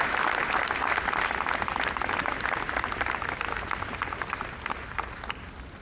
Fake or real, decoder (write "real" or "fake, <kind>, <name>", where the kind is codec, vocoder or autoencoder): real